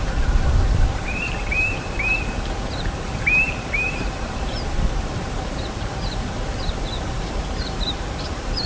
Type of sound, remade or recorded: remade